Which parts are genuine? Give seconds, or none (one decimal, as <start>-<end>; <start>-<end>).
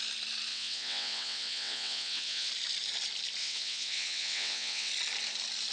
0.0-0.5; 2.5-3.4; 4.9-5.7